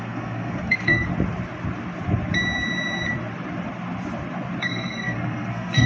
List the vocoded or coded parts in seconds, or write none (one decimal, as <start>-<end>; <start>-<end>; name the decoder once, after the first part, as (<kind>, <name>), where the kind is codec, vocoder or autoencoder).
0.0-1.1 (codec, SNAC); 4.6-5.9